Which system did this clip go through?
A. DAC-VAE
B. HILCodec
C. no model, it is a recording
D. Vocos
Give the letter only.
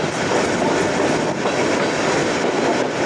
C